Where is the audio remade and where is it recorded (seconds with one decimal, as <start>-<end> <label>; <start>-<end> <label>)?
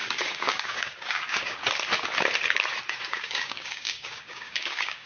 0.0-1.6 remade; 1.6-2.9 recorded; 2.9-5.1 remade